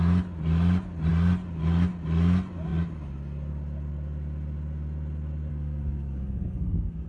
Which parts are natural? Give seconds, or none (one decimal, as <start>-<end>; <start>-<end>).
0.0-5.5